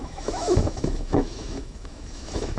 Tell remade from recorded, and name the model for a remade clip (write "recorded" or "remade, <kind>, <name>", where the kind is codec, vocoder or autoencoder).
remade, autoencoder, DAC-VAE